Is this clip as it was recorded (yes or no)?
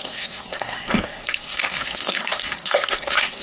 no